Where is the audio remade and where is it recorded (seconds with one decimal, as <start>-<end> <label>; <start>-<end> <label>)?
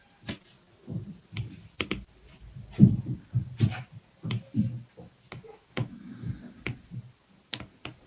0.0-5.8 recorded; 5.8-6.3 remade; 6.3-8.1 recorded